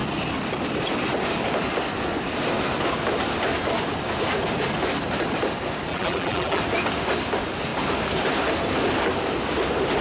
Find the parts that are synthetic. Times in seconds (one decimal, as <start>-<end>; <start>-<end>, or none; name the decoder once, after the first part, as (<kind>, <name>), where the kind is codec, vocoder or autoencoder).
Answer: 5.9-6.6 (vocoder, BigVGAN v2)